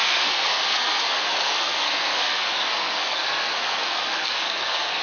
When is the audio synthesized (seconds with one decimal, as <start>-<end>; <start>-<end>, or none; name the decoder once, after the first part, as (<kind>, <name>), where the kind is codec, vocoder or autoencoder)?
0.0-5.0 (codec, SNAC)